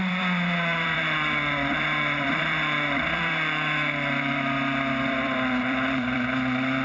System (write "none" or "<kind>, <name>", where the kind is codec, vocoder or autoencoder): vocoder, BigVGAN v2